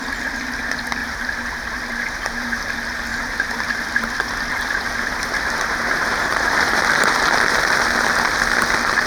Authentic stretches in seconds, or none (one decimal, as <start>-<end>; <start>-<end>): 0.0-1.0; 2.7-3.1; 7.1-9.1